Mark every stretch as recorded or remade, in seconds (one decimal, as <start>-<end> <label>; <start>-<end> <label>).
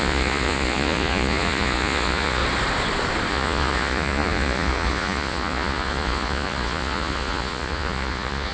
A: 0.0-2.4 remade; 2.4-3.3 recorded; 3.3-8.5 remade